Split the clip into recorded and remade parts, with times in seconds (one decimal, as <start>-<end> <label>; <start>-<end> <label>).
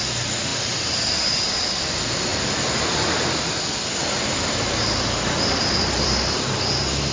0.0-0.5 recorded; 0.5-1.4 remade; 1.4-2.3 recorded; 2.3-6.6 remade; 6.6-7.1 recorded